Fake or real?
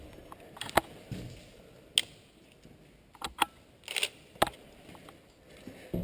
real